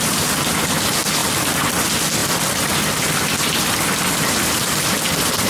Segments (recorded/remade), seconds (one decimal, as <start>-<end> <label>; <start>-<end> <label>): 0.0-5.5 recorded